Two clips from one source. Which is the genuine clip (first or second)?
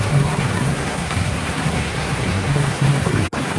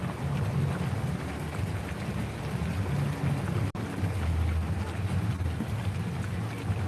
second